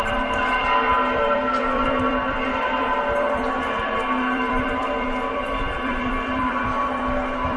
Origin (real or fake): fake